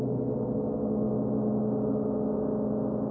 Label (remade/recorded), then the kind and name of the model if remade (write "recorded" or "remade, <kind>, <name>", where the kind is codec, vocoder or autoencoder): recorded